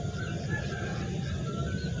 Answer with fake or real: real